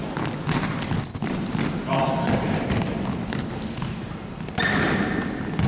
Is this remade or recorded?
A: recorded